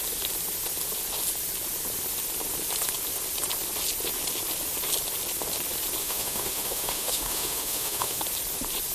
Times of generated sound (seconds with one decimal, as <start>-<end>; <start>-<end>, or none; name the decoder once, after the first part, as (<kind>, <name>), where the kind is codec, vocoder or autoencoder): 6.0-8.2 (autoencoder, DAC-VAE)